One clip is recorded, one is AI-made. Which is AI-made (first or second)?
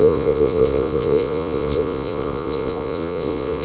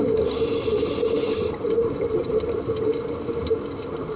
first